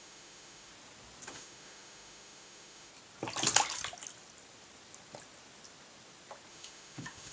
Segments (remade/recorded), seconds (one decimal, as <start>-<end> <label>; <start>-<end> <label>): 0.0-0.7 remade; 0.7-1.3 recorded; 1.3-2.9 remade; 2.9-6.5 recorded; 6.5-7.3 remade